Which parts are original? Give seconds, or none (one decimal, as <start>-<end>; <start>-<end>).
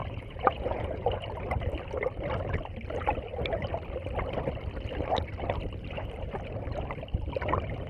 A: 1.3-7.9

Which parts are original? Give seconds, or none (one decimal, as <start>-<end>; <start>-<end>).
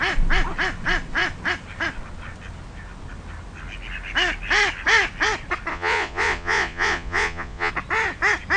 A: 0.0-5.7; 7.7-8.6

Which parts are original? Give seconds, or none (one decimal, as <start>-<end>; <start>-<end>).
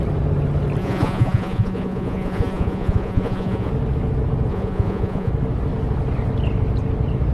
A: 0.0-0.8; 3.7-4.5; 5.3-7.3